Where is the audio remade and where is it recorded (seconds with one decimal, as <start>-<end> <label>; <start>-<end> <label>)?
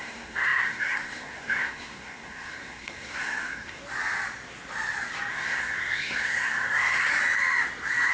0.0-3.8 remade; 3.8-5.3 recorded; 5.3-7.1 remade; 7.1-8.1 recorded